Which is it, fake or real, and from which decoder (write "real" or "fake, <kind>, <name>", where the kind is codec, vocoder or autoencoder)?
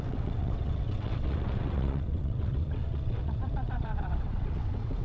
fake, vocoder, WaveNeXt